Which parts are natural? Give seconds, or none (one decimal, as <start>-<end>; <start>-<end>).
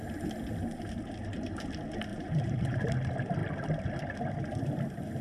0.0-2.1; 2.8-5.2